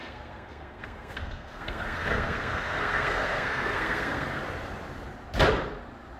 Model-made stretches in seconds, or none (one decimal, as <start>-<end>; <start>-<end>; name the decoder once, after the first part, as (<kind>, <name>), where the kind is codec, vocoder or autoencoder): 0.0-4.4 (codec, SNAC)